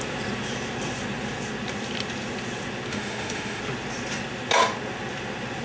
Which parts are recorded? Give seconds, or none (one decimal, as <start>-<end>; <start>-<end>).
0.0-2.9; 3.6-5.6